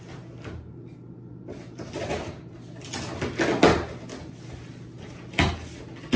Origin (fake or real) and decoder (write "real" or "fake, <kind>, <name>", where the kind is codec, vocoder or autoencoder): real